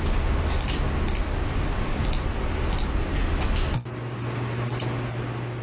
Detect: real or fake real